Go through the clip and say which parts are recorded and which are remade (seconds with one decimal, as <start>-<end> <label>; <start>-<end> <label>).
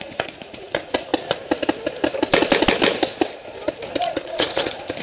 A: 0.0-1.1 remade; 1.1-4.0 recorded; 4.0-5.0 remade